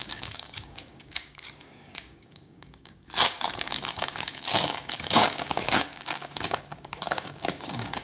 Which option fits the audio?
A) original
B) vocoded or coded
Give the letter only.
B